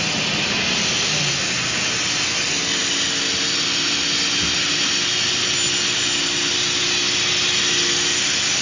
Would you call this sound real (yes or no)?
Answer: yes